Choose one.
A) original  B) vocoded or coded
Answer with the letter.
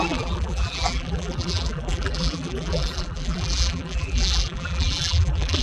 B